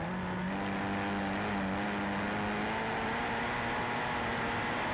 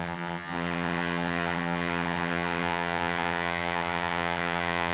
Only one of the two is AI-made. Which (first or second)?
second